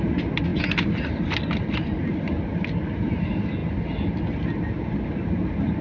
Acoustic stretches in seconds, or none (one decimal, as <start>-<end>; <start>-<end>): 0.0-5.8